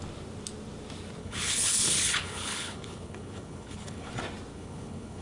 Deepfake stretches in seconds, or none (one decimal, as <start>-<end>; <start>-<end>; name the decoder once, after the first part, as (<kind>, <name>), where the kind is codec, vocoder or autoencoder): 1.2-4.1 (codec, HILCodec); 4.5-5.2